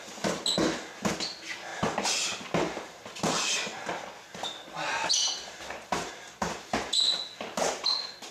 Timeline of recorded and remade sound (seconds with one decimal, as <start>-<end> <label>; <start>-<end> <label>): 0.0-8.3 recorded